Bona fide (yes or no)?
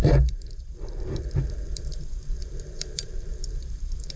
no